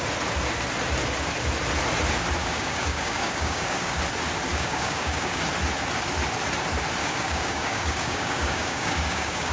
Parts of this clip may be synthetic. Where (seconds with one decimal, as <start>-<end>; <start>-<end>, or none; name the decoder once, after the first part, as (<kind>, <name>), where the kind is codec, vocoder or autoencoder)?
2.4-4.0 (codec, DAC); 4.5-5.4; 7.0-9.5